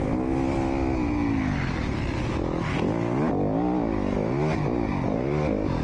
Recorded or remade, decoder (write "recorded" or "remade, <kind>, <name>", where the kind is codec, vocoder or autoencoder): recorded